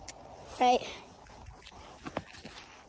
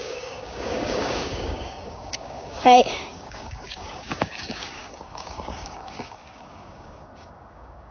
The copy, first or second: second